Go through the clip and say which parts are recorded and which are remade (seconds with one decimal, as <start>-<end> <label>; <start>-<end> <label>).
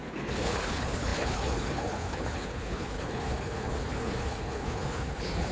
0.0-5.5 remade